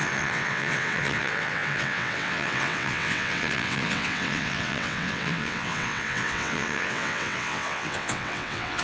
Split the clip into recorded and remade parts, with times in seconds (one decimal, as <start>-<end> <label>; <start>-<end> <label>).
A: 0.0-8.8 remade